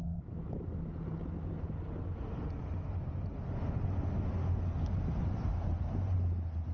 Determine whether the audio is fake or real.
real